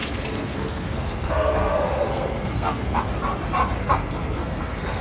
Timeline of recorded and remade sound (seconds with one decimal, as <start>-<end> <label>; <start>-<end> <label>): 0.0-3.0 remade; 3.0-3.8 recorded; 3.8-5.0 remade